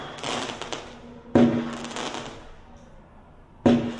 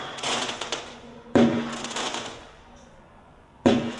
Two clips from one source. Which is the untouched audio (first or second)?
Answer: first